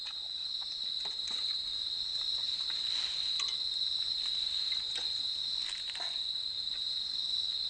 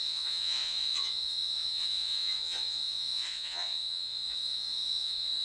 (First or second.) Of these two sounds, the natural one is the first